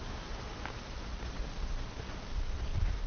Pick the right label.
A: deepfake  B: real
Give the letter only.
B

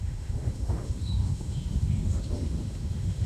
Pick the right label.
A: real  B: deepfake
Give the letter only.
B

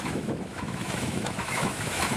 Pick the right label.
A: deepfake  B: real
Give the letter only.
A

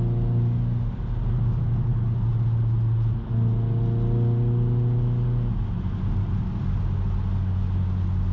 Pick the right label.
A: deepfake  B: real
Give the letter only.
B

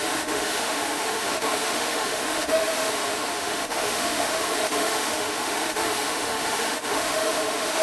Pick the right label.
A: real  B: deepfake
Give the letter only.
B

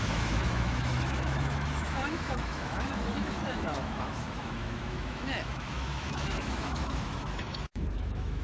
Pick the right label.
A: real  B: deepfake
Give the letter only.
B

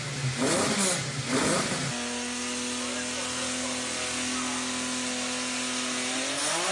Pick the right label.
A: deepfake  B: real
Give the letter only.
B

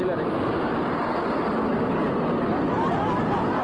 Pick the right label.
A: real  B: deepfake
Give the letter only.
A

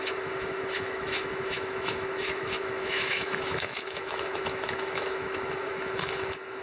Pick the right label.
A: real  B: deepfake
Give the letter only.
B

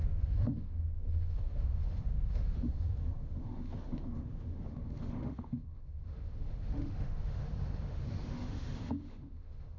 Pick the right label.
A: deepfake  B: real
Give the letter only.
A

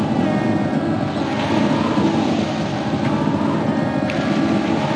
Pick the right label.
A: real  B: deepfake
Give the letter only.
A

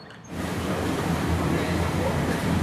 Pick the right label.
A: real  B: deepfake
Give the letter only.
A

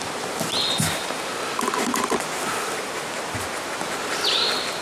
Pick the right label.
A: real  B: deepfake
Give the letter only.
A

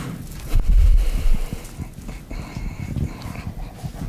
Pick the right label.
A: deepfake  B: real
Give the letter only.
B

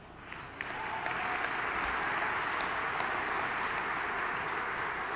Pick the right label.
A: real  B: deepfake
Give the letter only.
A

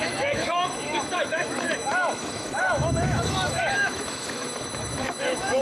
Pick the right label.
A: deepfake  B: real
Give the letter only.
A